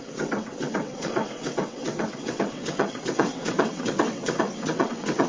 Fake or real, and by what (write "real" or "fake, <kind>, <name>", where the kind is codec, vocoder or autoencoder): fake, vocoder, WaveNeXt